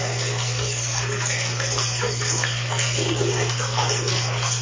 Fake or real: fake